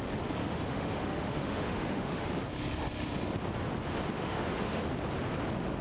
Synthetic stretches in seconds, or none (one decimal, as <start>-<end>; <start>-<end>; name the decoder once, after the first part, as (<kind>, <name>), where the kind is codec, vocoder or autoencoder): 0.4-2.3 (autoencoder, DAC-VAE); 4.2-4.8